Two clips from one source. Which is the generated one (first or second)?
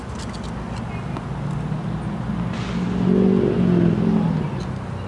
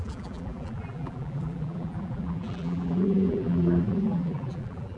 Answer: second